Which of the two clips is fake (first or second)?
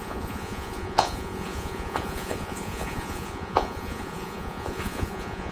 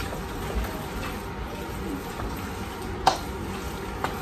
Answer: first